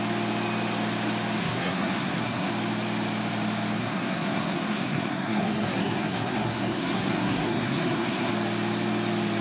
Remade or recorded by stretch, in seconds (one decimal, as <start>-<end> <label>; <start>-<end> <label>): 0.0-1.4 recorded; 1.4-2.5 remade; 2.5-3.8 recorded; 3.8-8.3 remade; 8.3-9.4 recorded